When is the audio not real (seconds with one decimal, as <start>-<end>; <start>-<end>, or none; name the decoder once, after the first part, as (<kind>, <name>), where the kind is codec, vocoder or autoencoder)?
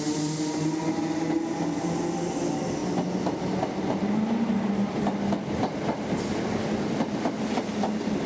none